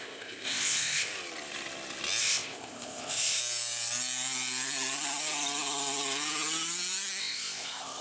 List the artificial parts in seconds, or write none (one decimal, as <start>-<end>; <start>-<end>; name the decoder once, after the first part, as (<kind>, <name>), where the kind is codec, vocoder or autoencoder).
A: 0.0-1.1 (codec, ZipCodec); 2.2-3.4; 7.2-8.0